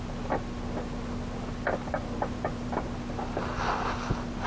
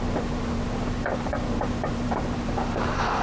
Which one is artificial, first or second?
second